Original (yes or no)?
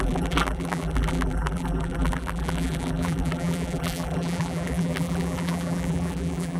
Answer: no